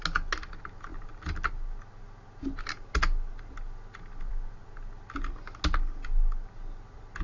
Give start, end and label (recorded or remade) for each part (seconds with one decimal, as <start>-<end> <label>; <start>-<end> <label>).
0.0-7.2 recorded